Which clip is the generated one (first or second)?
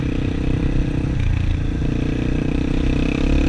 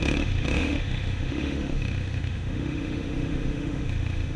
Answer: second